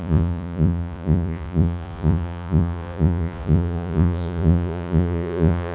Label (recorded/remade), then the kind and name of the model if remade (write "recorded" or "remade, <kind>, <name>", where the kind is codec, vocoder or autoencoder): remade, vocoder, Vocos